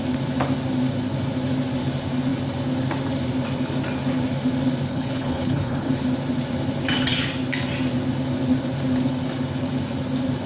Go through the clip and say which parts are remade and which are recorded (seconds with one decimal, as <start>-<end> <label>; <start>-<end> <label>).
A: 0.0-4.9 recorded; 4.9-5.9 remade; 5.9-10.5 recorded